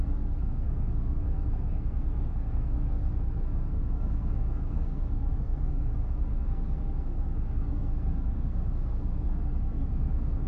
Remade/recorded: remade